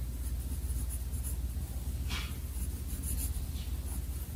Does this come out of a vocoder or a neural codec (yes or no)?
no